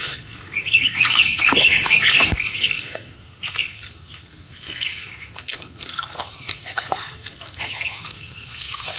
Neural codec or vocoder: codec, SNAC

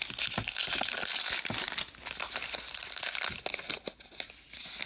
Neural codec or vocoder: none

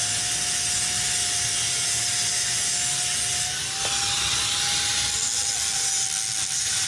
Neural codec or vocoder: none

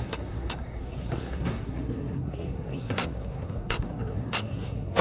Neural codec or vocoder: codec, SNAC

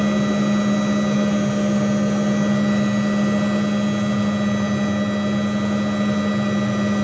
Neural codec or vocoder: none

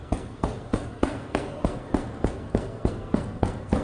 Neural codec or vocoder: codec, SNAC